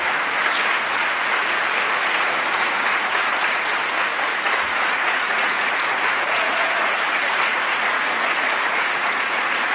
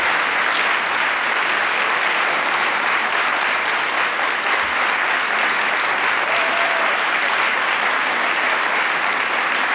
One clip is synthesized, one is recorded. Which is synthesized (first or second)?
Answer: first